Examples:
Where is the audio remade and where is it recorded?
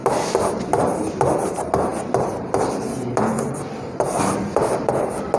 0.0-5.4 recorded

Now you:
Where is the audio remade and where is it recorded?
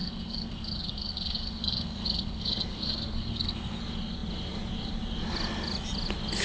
0.0-3.8 remade; 3.8-6.4 recorded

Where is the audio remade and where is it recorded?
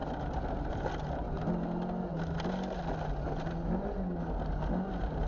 0.0-5.3 recorded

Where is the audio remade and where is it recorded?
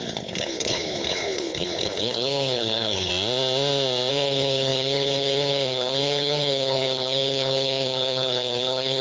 0.0-3.1 remade; 3.1-4.1 recorded; 4.1-9.0 remade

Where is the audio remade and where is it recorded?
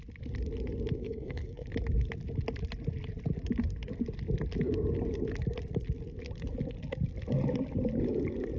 0.0-1.0 recorded; 1.0-1.7 remade; 1.7-8.6 recorded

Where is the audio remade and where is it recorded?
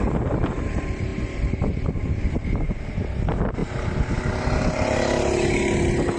0.0-6.2 recorded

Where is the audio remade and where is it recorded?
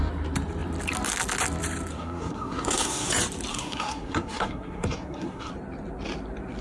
0.0-1.9 recorded; 1.9-3.1 remade; 3.1-3.5 recorded; 3.5-5.5 remade; 5.5-6.6 recorded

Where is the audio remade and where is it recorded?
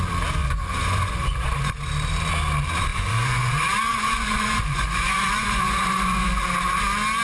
0.0-0.4 recorded; 0.4-1.7 remade; 1.7-2.9 recorded; 2.9-6.4 remade; 6.4-7.2 recorded